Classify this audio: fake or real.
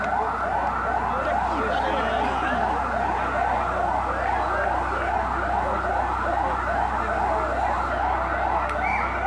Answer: real